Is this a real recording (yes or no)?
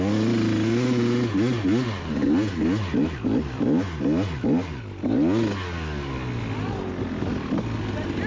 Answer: yes